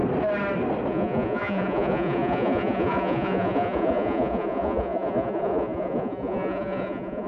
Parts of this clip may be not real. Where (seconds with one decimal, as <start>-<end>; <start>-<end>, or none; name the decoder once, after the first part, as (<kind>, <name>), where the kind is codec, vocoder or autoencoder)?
0.9-7.3 (vocoder, Vocos)